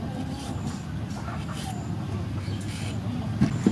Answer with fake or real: real